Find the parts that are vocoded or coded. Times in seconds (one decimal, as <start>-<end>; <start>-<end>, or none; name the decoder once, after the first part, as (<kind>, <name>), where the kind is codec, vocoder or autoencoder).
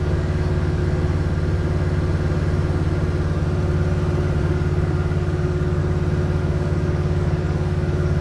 0.0-0.8 (codec, DAC); 4.4-5.8; 6.4-8.2